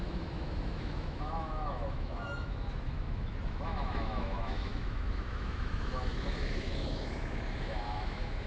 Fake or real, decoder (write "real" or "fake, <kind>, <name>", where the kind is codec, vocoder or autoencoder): fake, autoencoder, DAC-VAE